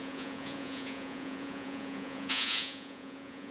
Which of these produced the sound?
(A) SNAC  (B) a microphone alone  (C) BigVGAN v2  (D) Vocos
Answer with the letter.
D